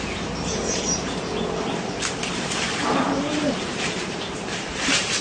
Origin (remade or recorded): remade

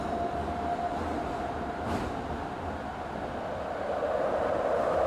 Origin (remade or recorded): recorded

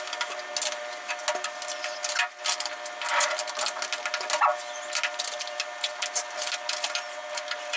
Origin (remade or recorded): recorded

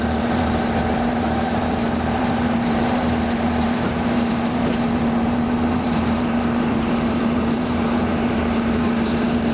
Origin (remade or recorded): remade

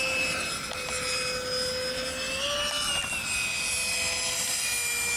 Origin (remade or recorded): recorded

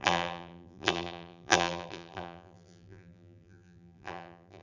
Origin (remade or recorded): remade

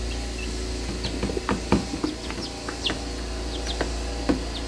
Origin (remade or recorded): recorded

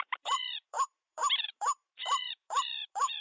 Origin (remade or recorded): remade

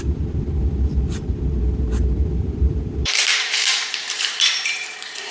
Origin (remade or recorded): remade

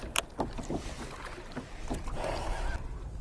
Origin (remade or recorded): recorded